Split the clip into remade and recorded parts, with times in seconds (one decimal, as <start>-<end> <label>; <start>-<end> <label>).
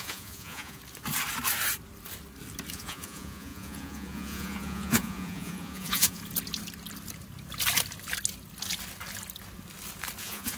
0.0-0.8 remade; 0.8-2.7 recorded; 2.7-6.2 remade; 6.2-10.2 recorded; 10.2-10.6 remade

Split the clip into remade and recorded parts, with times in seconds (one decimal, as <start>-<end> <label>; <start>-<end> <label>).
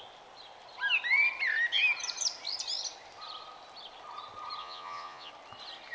0.0-4.6 recorded; 4.6-5.3 remade; 5.3-5.9 recorded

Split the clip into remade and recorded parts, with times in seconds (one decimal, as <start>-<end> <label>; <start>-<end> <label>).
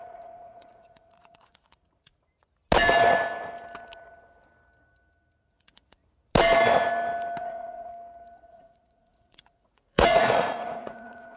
0.0-2.1 remade; 2.1-5.4 recorded; 5.4-6.0 remade; 6.0-7.4 recorded; 7.4-7.9 remade; 7.9-8.5 recorded; 8.5-11.4 remade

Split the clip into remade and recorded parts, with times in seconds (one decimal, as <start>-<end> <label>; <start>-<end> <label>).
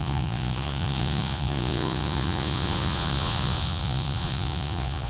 0.0-5.1 remade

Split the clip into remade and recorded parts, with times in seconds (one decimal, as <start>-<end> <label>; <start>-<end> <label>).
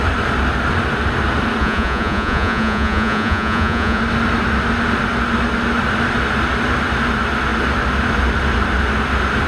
0.0-1.6 recorded; 1.6-4.0 remade; 4.0-9.5 recorded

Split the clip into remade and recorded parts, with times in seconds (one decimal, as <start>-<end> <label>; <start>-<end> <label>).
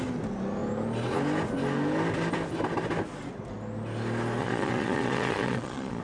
0.0-4.4 recorded; 4.4-6.0 remade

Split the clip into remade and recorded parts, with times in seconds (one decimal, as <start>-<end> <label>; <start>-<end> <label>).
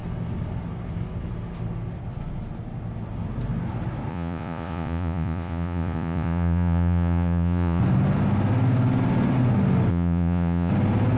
0.0-4.1 recorded; 4.1-7.8 remade; 7.8-9.9 recorded; 9.9-10.7 remade; 10.7-11.2 recorded